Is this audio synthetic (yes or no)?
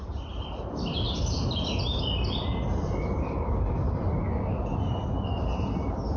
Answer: no